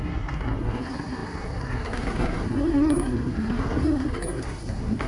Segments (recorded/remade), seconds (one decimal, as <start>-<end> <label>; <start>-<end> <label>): 0.0-5.1 remade